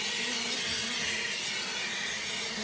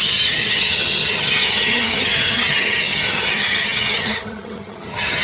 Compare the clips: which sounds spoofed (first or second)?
second